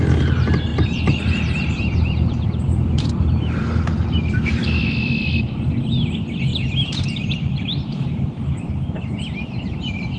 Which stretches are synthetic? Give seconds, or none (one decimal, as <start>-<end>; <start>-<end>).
0.7-5.4; 6.5-9.2